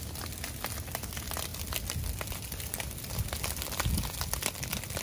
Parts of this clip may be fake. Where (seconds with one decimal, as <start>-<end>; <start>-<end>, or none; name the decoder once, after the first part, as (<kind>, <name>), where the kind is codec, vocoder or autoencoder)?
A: none